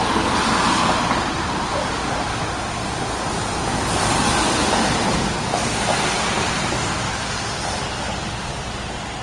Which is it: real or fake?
real